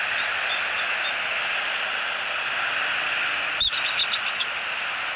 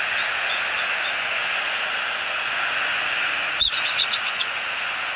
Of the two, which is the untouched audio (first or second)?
first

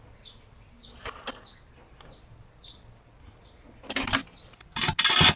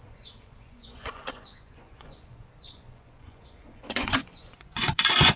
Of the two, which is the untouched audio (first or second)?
first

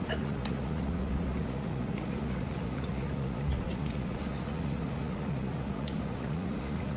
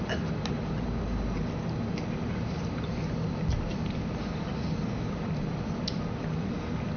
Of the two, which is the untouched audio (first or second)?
second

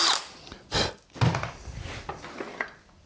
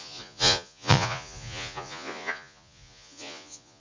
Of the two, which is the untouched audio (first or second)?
first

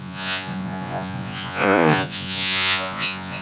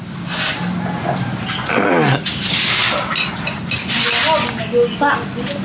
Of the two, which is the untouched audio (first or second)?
second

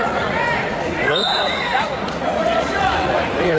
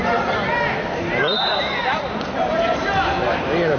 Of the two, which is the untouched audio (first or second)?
second